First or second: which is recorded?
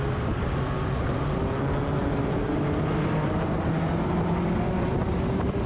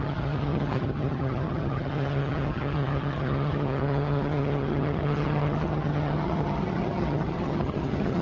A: first